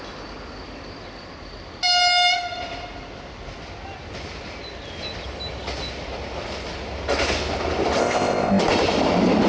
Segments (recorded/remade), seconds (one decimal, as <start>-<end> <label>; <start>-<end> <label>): 0.0-8.0 recorded; 8.0-8.6 remade; 8.6-9.5 recorded